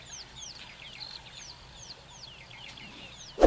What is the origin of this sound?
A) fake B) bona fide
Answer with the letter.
A